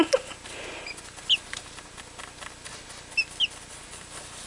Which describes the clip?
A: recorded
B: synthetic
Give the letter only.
A